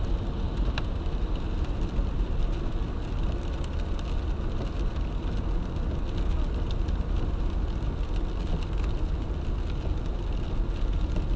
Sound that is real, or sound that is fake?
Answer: real